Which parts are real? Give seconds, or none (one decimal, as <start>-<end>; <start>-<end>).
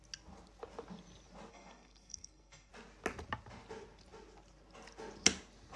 0.0-1.5; 2.7-5.8